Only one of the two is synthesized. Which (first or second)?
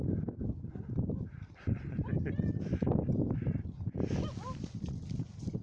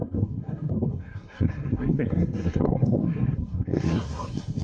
second